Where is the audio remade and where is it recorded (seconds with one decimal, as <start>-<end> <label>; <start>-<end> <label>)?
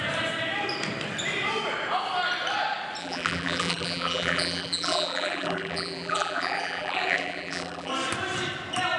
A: 0.0-3.0 recorded; 3.0-7.9 remade; 7.9-9.0 recorded